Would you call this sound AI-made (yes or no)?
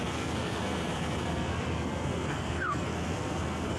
yes